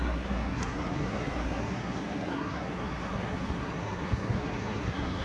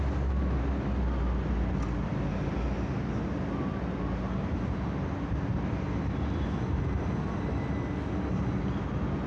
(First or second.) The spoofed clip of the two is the first